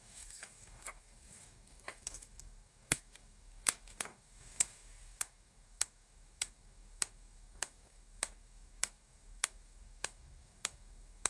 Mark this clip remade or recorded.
remade